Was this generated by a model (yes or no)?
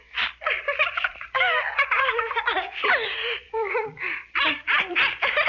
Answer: yes